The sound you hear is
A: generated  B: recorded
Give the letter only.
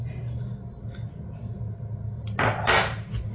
B